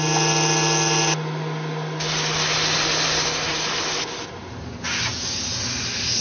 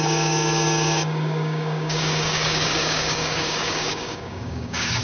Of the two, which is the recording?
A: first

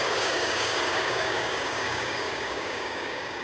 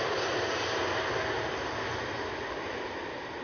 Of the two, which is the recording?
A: second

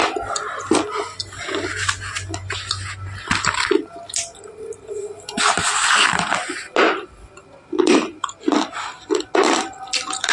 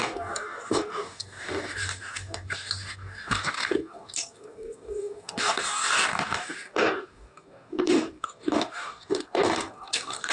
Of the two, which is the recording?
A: first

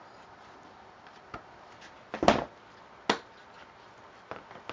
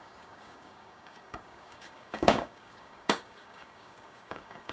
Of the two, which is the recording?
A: first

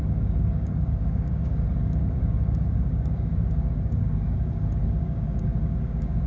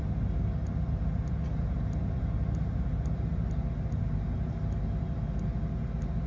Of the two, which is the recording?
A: second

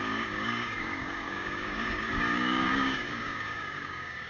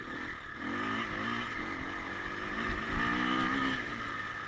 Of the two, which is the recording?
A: second